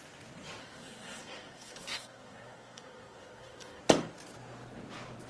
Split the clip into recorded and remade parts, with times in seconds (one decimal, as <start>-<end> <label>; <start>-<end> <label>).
0.0-0.6 recorded; 0.6-3.8 remade; 3.8-5.3 recorded